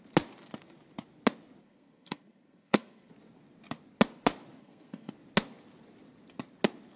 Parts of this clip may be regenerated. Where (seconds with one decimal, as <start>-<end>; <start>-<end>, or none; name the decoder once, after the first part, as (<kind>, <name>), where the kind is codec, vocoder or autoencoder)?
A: 1.6-3.1 (codec, SNAC); 4.6-5.1